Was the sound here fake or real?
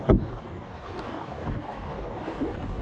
fake